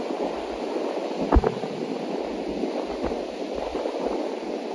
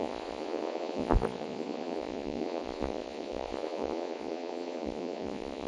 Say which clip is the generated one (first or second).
second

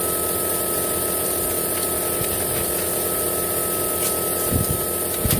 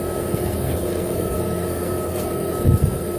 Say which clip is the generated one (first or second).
second